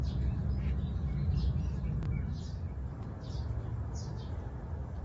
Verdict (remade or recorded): recorded